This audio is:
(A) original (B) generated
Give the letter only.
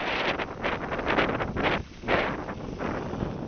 A